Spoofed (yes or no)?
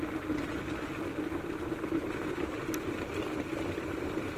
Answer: no